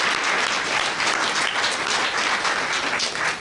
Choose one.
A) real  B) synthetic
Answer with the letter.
A